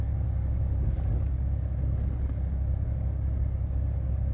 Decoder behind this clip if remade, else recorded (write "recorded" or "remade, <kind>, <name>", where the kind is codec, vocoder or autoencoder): remade, codec, DAC